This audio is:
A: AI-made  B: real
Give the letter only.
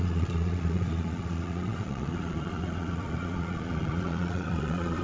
A